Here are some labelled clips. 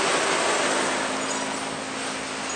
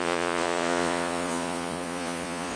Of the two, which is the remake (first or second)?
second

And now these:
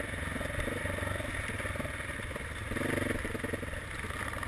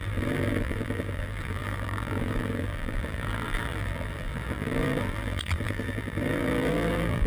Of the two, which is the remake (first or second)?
second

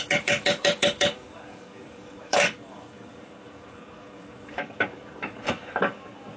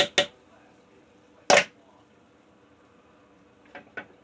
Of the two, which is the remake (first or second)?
first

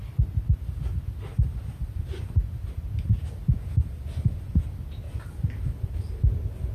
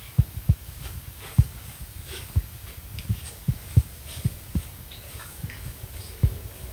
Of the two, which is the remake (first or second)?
second